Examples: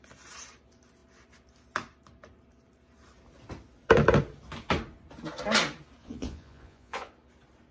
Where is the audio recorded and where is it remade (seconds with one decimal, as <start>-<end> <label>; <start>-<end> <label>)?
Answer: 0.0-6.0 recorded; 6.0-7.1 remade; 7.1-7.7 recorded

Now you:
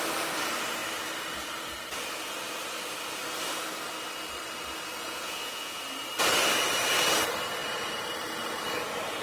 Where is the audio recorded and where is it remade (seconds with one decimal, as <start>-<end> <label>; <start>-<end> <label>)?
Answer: 0.0-5.0 recorded; 5.0-5.8 remade; 5.8-9.2 recorded

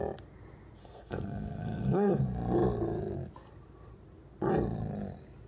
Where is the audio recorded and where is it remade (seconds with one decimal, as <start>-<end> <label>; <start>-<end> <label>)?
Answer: 0.0-0.8 recorded; 0.8-2.2 remade; 2.2-5.5 recorded

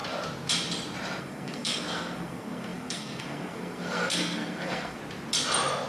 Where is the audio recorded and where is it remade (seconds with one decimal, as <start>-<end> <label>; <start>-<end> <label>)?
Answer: 0.0-1.2 recorded; 1.2-5.0 remade; 5.0-5.9 recorded

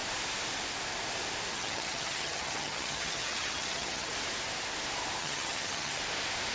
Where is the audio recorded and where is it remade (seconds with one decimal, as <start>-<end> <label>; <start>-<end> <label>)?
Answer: 0.0-1.5 recorded; 1.5-4.1 remade; 4.1-5.2 recorded; 5.2-6.0 remade; 6.0-6.5 recorded

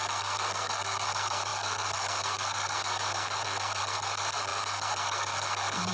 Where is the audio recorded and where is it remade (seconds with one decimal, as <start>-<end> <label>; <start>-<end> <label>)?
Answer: 0.0-5.9 remade

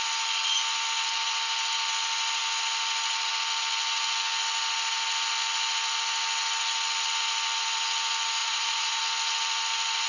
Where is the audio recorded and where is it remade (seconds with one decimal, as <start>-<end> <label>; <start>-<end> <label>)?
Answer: 0.0-8.4 recorded; 8.4-9.0 remade; 9.0-10.1 recorded